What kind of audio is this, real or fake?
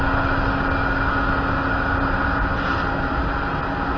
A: real